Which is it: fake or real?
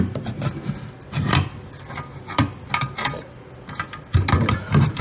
real